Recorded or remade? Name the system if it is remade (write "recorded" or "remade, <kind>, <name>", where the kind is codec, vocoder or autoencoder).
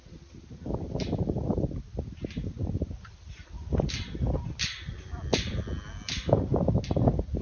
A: recorded